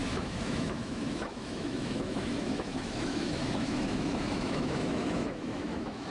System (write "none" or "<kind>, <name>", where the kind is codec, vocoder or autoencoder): autoencoder, DAC-VAE